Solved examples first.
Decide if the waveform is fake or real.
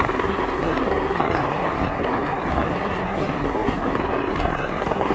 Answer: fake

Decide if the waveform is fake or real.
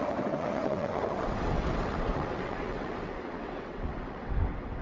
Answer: fake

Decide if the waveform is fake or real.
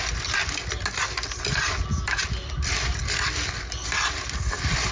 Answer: real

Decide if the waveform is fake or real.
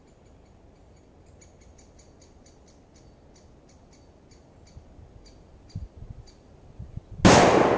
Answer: real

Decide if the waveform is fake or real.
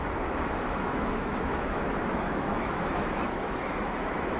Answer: fake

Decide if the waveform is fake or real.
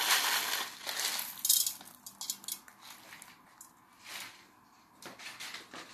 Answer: real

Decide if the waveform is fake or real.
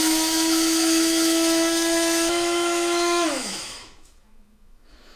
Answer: fake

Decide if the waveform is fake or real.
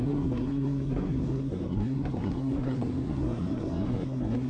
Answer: fake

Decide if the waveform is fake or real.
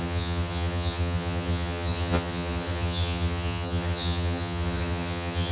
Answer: fake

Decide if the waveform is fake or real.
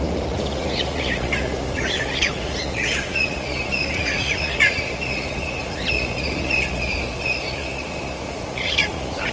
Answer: fake